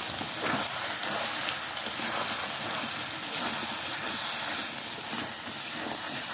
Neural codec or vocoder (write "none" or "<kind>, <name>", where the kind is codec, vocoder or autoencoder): none